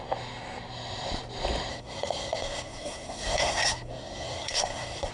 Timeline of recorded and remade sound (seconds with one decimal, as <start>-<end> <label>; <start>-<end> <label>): 0.0-1.7 recorded; 1.7-5.1 remade